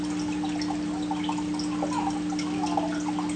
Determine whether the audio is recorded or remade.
recorded